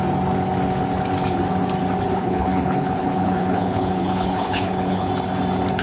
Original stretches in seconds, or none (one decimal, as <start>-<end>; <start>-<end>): 0.0-2.2; 5.1-5.8